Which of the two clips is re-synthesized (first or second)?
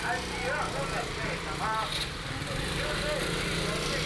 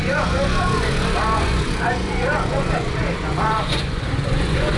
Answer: second